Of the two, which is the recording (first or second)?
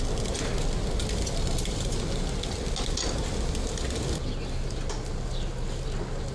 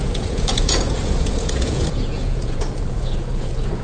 first